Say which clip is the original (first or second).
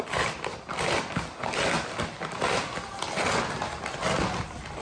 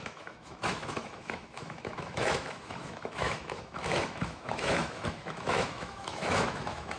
first